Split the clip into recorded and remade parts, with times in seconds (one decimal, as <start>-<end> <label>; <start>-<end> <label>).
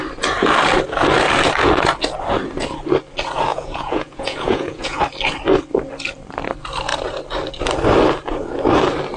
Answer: 0.0-3.5 recorded; 3.5-5.0 remade; 5.0-9.2 recorded